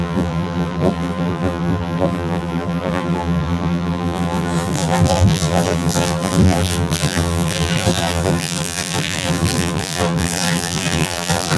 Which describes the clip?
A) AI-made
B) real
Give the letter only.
A